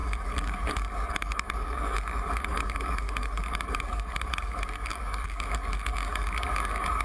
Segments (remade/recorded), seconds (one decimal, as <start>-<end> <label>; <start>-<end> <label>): 0.0-7.0 remade